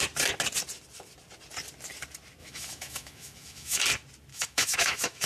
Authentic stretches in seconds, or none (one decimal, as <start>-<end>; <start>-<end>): 0.0-2.4; 3.8-4.3